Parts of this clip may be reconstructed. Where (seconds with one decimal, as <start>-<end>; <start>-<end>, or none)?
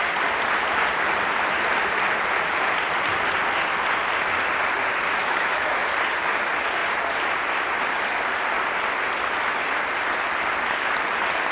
5.2-5.8